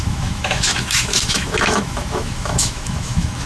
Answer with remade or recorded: remade